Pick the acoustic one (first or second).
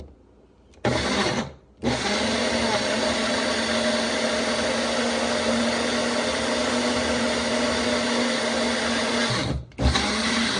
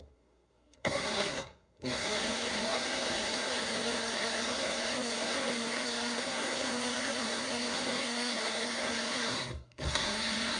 first